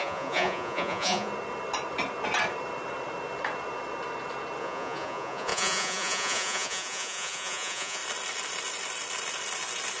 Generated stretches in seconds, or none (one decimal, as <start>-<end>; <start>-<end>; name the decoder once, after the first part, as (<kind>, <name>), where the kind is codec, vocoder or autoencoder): 0.0-1.3 (vocoder, Vocos); 4.6-8.0